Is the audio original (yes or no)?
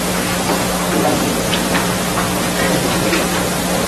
yes